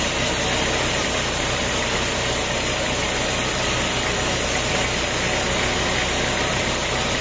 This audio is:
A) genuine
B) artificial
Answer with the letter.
A